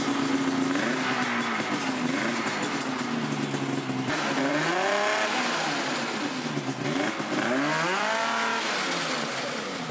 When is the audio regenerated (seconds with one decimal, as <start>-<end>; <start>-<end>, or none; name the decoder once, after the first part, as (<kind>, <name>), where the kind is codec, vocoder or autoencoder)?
none